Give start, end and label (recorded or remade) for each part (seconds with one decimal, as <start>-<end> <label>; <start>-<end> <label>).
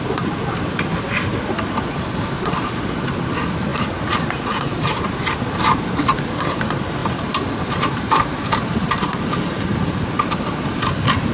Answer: 0.0-3.7 recorded; 3.7-5.1 remade; 5.1-7.0 recorded; 7.0-9.2 remade; 9.2-11.3 recorded